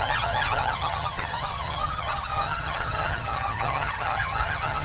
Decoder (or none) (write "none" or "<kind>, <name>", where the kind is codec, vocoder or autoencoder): vocoder, HiFi-GAN